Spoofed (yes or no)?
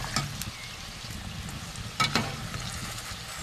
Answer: no